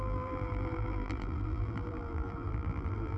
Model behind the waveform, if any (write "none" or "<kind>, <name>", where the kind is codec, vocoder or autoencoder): vocoder, BigVGAN v2